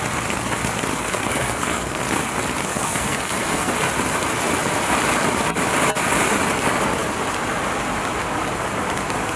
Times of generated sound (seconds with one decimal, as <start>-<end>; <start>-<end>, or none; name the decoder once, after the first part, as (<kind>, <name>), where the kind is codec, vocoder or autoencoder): 0.9-2.0 (codec, SNAC); 2.7-3.7